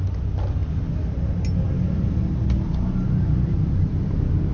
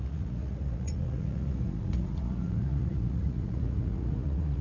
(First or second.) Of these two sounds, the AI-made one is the second